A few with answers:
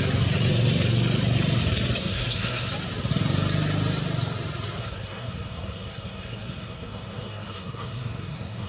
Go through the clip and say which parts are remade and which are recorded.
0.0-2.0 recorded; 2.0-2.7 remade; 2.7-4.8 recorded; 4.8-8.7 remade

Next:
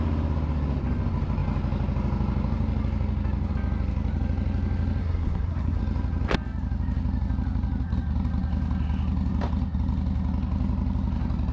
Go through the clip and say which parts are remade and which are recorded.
0.0-5.0 recorded; 5.0-5.8 remade; 5.8-11.5 recorded

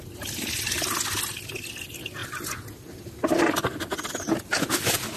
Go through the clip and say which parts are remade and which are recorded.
0.0-5.2 recorded

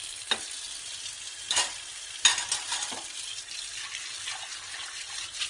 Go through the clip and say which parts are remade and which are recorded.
0.0-5.5 recorded

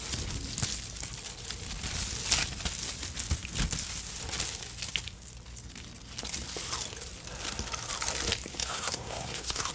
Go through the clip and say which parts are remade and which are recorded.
0.0-8.5 recorded; 8.5-9.7 remade